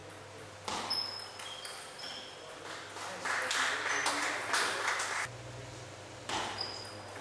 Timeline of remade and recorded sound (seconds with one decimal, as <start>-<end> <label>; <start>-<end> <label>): 0.0-7.2 recorded